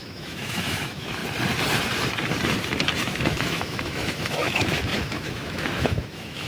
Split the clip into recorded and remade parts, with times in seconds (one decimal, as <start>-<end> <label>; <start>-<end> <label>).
0.0-1.2 remade; 1.2-3.0 recorded; 3.0-6.5 remade